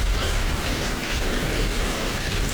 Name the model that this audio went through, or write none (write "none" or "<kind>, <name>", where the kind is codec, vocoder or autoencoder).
codec, DAC